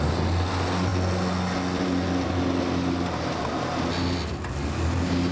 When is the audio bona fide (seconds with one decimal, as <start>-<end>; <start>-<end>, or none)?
0.0-5.3